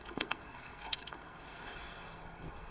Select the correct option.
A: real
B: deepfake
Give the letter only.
B